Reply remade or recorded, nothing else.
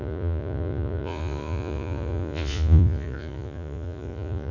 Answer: remade